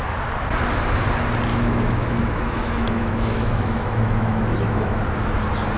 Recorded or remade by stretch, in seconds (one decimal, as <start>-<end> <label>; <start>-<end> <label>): 0.0-1.5 recorded; 1.5-5.0 remade; 5.0-5.8 recorded

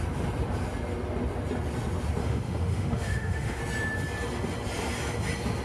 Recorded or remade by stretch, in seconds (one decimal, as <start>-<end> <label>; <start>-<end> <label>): 0.0-2.2 recorded; 2.2-3.6 remade; 3.6-5.6 recorded

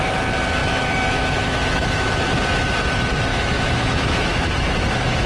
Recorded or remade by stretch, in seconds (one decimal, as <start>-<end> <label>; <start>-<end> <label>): 0.0-0.6 recorded; 0.6-2.2 remade; 2.2-3.3 recorded; 3.3-5.3 remade